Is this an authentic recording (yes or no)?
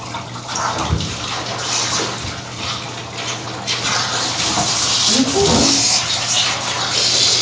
yes